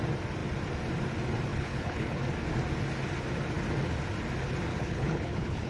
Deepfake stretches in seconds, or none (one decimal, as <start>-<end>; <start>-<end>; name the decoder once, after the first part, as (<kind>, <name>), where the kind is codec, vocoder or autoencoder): 1.5-2.2 (codec, HILCodec); 4.7-5.7